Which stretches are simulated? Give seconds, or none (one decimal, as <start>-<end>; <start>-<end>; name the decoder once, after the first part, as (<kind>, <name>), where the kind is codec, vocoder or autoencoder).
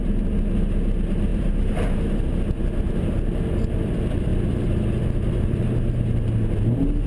1.3-2.1 (vocoder, BigVGAN v2)